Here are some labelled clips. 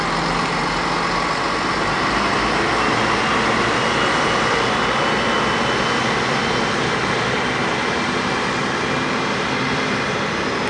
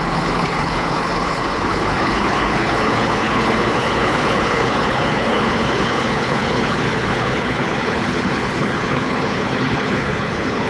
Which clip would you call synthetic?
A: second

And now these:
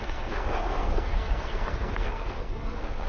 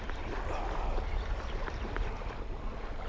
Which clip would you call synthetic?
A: first